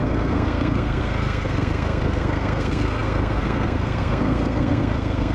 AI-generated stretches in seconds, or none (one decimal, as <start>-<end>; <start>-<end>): 0.0-5.3